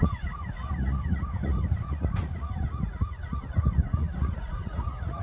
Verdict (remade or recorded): remade